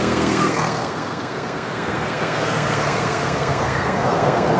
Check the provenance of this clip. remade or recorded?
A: remade